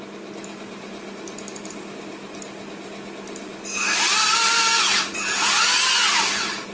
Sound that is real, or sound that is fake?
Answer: real